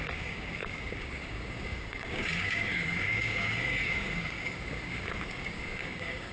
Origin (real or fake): fake